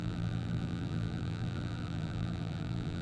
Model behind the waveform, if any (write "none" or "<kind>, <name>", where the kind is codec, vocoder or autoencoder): vocoder, BigVGAN v2